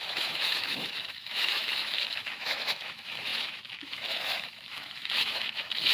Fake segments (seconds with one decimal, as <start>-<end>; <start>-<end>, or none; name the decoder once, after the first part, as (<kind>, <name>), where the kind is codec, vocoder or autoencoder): 0.0-5.9 (autoencoder, DAC-VAE)